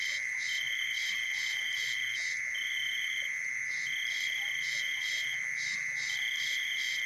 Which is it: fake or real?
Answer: fake